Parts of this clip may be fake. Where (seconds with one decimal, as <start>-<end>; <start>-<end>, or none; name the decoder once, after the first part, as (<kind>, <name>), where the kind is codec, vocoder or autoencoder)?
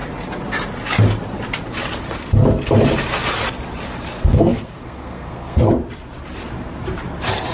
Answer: 4.1-5.7 (codec, SNAC)